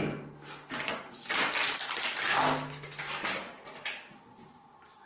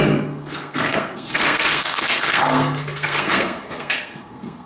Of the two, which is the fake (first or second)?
second